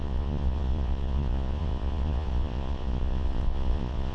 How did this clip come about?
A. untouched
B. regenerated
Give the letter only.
B